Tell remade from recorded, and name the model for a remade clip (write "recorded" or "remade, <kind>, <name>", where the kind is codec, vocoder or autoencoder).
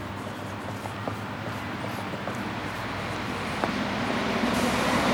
remade, vocoder, BigVGAN v2